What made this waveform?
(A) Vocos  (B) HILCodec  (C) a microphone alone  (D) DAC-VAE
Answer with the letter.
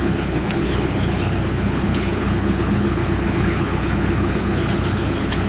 B